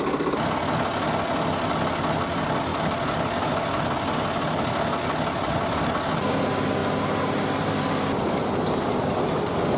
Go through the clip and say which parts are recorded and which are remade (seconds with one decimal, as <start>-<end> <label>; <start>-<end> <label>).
0.0-9.8 recorded